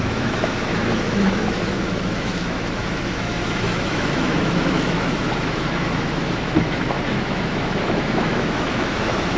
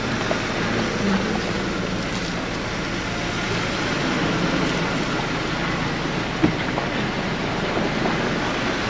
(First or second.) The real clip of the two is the second